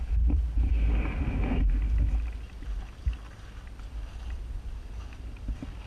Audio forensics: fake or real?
real